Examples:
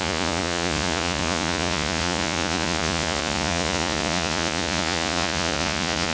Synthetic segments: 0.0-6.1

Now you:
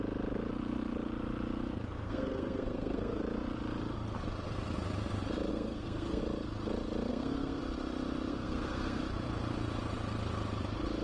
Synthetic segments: 1.8-3.2; 5.5-6.2; 7.1-7.6; 8.3-9.0

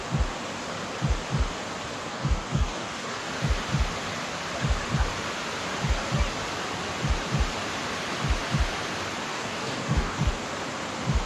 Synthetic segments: 2.1-3.3; 9.3-10.3

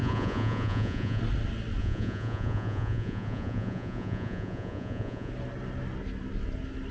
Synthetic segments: 0.0-1.2; 1.8-5.3